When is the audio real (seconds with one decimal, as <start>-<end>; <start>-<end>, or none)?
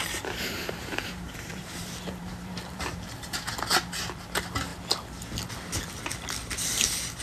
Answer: 3.5-7.2